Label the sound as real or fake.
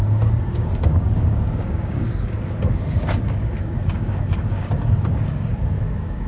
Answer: fake